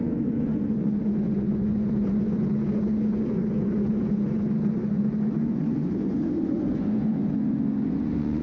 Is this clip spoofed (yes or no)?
yes